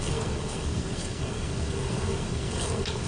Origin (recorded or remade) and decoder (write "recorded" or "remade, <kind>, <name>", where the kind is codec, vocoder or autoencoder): remade, codec, SNAC